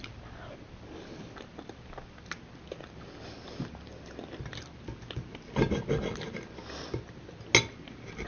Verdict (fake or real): real